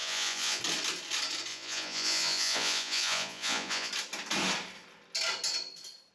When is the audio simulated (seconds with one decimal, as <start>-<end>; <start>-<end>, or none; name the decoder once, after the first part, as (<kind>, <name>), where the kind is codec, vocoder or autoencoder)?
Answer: 0.0-0.6 (vocoder, Vocos); 1.5-3.9